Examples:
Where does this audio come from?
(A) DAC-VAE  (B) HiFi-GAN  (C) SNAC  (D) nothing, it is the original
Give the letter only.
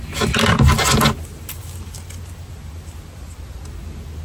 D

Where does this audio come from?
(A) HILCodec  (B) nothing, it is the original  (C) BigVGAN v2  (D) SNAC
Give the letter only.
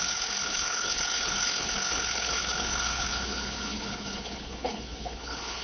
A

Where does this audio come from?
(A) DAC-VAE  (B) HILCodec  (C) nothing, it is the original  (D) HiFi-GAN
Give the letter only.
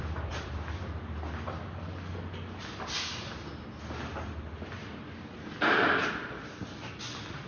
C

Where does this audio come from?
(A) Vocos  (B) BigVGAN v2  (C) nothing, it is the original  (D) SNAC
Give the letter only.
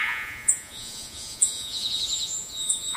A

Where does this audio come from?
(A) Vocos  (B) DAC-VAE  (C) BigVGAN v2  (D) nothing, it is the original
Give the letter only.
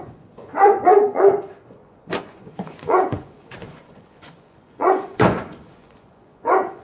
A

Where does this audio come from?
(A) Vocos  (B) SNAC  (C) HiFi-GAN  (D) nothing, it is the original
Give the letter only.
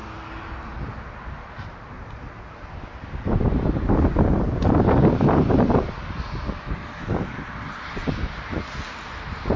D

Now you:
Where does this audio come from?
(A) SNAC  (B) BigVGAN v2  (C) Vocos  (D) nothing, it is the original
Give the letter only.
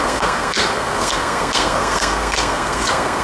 A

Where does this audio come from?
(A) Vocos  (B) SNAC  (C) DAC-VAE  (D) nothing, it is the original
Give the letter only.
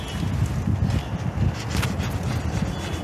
D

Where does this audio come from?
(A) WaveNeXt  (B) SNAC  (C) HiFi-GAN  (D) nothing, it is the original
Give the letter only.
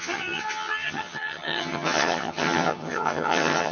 C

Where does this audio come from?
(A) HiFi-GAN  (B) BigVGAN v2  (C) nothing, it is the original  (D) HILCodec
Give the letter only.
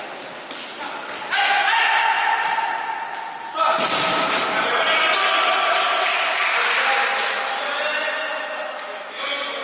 C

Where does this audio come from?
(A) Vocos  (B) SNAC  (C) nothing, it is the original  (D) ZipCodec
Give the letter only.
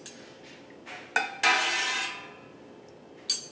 C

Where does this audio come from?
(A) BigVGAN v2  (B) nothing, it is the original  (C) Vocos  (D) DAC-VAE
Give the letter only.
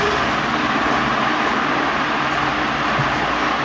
B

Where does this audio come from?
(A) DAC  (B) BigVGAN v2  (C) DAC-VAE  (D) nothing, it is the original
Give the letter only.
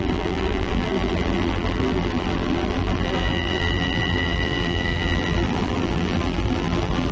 B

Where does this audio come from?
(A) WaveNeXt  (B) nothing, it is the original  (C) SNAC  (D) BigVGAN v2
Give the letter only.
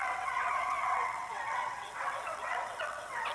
A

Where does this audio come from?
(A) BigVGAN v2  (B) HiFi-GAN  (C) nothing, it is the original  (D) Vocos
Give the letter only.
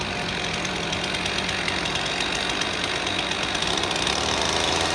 C